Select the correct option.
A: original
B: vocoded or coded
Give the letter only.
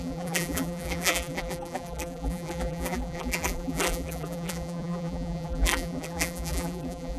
B